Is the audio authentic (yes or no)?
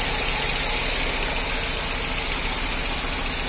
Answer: yes